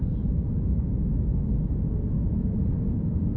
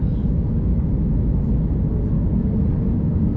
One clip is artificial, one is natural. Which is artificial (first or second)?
first